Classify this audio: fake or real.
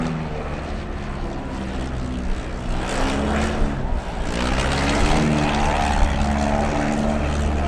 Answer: real